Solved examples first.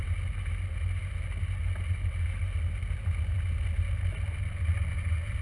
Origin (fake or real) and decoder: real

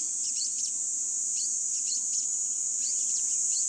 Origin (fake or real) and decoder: real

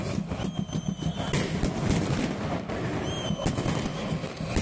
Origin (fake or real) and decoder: real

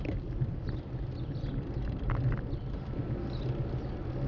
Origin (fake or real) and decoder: real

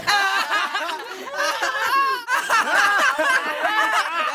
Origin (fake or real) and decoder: real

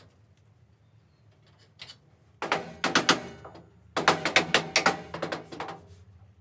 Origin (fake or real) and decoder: real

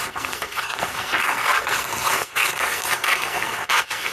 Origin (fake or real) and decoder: fake, codec, SNAC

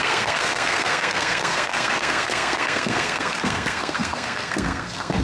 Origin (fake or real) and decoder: fake, codec, SNAC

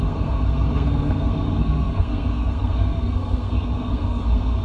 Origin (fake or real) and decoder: fake, codec, SNAC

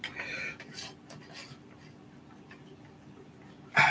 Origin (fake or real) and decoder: real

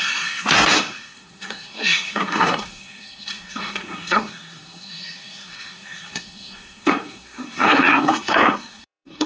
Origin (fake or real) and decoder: fake, codec, SNAC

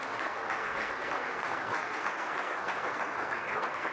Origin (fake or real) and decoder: fake, codec, SNAC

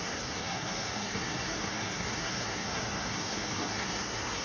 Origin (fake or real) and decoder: fake, codec, SNAC